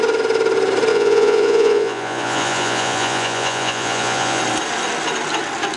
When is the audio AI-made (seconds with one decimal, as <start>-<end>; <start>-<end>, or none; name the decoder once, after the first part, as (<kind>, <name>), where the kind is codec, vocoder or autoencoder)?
0.9-4.4 (vocoder, Vocos)